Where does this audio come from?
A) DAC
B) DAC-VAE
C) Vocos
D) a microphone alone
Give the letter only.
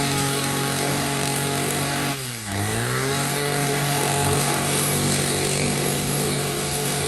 A